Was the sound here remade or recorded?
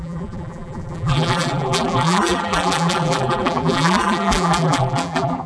remade